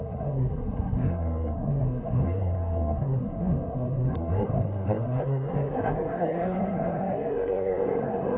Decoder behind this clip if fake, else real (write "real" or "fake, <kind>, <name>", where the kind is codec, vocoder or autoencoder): fake, codec, SNAC